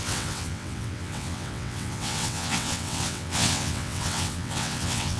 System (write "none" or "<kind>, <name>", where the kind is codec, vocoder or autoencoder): vocoder, WaveNeXt